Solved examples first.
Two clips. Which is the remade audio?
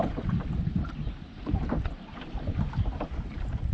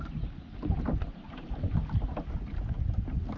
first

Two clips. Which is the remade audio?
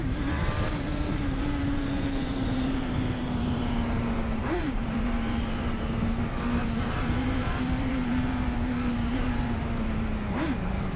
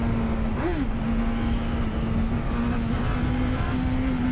first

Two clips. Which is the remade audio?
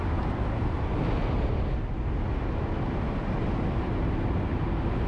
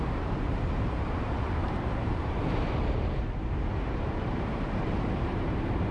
second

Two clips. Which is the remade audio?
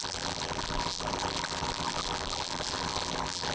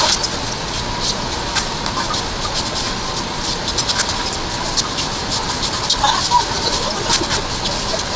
first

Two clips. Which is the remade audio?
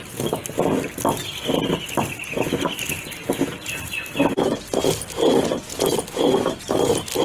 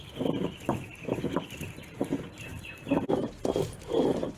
second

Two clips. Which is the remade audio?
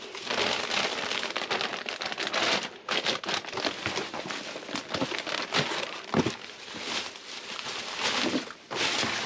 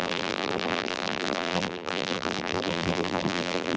second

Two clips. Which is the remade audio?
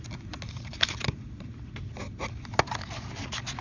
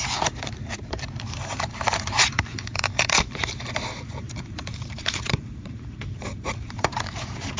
second